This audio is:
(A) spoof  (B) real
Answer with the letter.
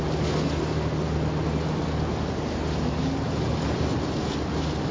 B